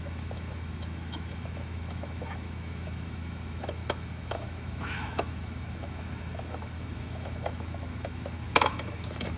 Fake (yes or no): yes